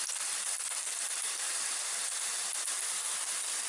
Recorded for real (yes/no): yes